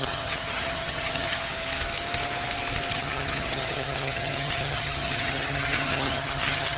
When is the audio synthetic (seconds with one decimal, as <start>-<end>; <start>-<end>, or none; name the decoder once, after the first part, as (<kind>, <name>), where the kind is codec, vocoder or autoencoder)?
0.0-1.5 (vocoder, HiFi-GAN); 2.9-6.8